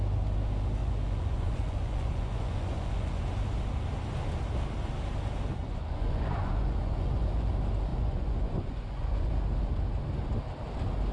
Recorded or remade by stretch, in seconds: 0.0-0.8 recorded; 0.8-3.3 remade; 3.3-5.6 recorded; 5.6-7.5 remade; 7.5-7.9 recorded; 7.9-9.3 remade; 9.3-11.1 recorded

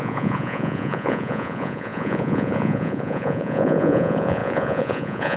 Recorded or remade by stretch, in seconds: 0.0-5.4 remade

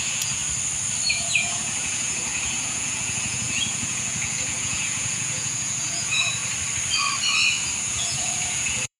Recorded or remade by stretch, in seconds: 0.0-0.4 remade; 0.4-1.1 recorded; 1.1-6.4 remade; 6.4-7.8 recorded; 7.8-9.0 remade

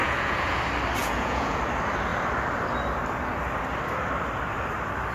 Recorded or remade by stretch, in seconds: 0.0-0.6 remade; 0.6-1.0 recorded; 1.0-1.6 remade; 1.6-5.1 recorded

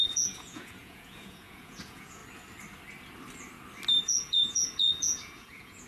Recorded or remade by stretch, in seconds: 0.0-2.2 remade; 2.2-4.0 recorded; 4.0-5.9 remade

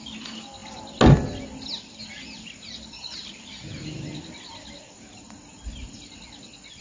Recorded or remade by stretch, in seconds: 0.0-6.8 recorded

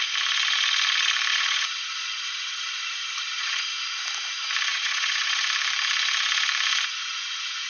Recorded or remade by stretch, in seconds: 0.0-1.3 recorded; 1.3-3.6 remade; 3.6-4.7 recorded; 4.7-5.4 remade; 5.4-7.7 recorded

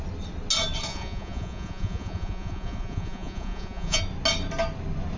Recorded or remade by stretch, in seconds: 0.0-0.9 recorded; 0.9-4.0 remade; 4.0-5.2 recorded